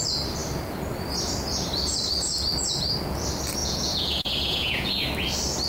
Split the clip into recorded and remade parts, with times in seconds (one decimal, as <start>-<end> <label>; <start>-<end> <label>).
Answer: 0.0-3.6 recorded; 3.6-4.9 remade; 4.9-5.7 recorded